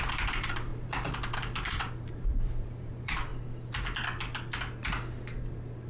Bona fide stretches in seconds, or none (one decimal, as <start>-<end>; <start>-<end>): 0.7-1.7; 3.3-5.9